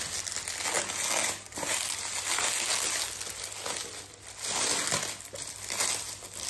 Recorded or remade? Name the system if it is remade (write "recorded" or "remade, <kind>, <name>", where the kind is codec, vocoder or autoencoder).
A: recorded